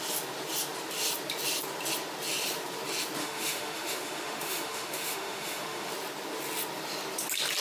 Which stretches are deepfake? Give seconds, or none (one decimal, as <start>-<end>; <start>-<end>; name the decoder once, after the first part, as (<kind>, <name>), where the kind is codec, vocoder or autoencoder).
3.2-5.9 (autoencoder, DAC-VAE)